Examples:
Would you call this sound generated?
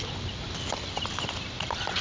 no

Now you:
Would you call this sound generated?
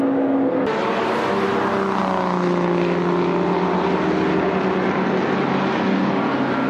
no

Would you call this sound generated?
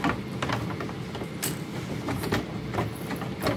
no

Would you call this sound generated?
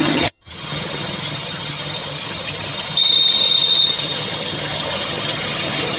yes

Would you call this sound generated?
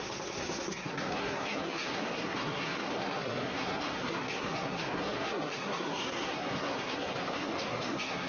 yes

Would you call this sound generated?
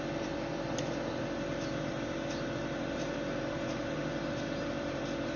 yes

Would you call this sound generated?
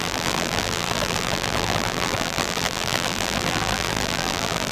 yes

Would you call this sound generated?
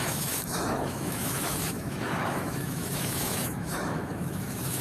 yes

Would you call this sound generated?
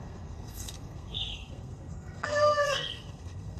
yes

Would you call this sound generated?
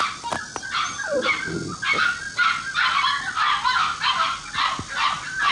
no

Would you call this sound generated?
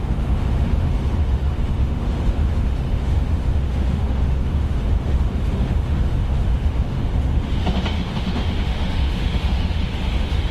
yes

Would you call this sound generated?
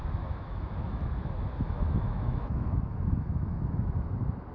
yes